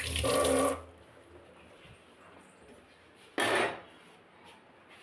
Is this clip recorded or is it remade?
recorded